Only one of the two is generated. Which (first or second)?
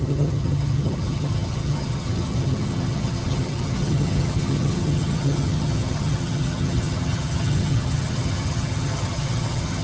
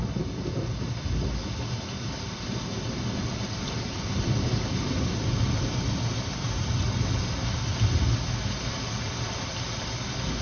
first